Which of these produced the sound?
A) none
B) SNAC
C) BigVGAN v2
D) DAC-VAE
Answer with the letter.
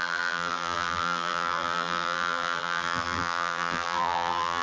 C